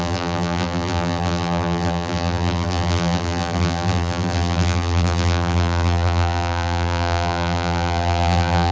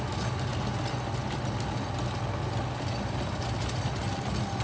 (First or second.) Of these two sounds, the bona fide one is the second